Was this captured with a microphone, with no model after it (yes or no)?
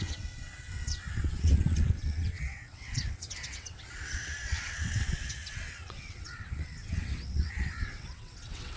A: no